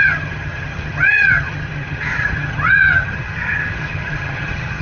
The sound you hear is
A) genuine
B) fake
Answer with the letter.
B